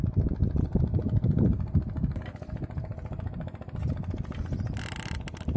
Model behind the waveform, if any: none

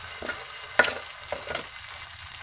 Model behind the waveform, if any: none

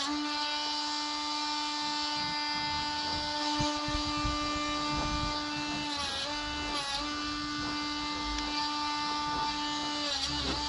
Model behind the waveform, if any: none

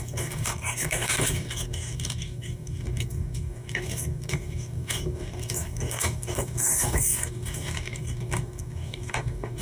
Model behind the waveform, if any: codec, DAC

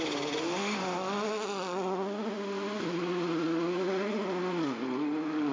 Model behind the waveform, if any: none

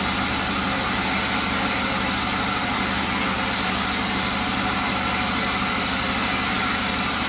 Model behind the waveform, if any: none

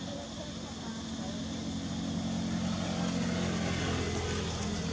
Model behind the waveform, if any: none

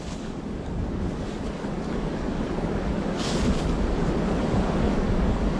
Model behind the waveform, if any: codec, DAC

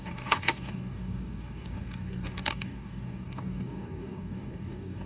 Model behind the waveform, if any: codec, DAC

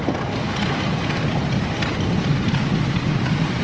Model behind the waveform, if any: none